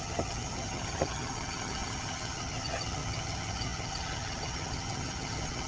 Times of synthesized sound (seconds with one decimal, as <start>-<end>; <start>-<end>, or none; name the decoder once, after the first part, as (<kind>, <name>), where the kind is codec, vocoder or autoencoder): 0.0-5.7 (vocoder, HiFi-GAN)